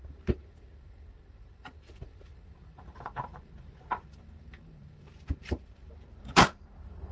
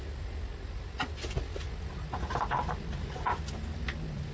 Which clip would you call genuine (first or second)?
second